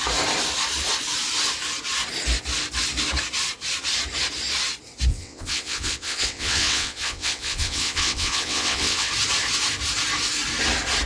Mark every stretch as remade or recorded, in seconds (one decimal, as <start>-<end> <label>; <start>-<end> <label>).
0.0-5.1 recorded; 5.1-9.1 remade; 9.1-11.1 recorded